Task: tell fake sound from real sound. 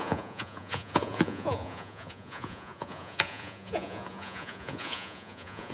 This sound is fake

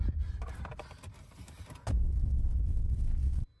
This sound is real